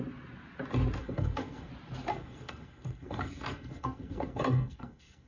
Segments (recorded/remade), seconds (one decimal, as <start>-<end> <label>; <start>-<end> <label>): 0.0-1.0 recorded; 1.0-1.7 remade; 1.7-2.1 recorded; 2.1-5.3 remade